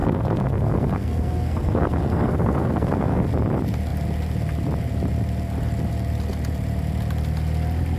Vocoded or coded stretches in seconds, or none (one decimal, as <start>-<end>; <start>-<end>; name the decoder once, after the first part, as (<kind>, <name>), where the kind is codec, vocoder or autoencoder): 0.0-3.3 (codec, SNAC)